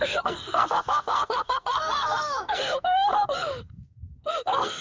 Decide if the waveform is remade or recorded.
remade